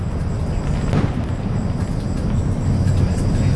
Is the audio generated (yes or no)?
no